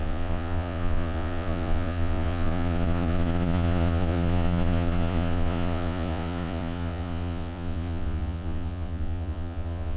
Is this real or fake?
fake